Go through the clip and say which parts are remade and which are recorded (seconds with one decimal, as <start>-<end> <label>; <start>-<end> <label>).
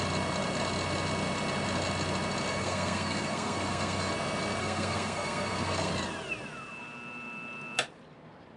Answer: 0.0-2.5 recorded; 2.5-4.1 remade; 4.1-4.6 recorded; 4.6-5.9 remade; 5.9-8.6 recorded